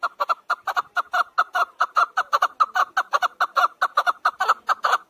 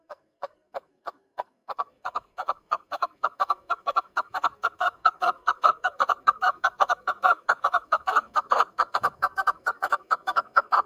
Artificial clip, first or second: second